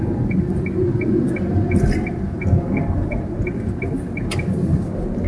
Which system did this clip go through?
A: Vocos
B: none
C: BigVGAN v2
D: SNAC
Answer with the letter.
B